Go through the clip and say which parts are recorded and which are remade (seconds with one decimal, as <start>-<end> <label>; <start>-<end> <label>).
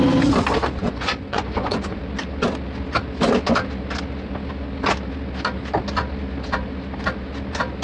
0.0-0.8 recorded; 0.8-2.0 remade; 2.0-7.8 recorded